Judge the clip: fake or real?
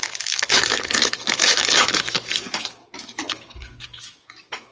fake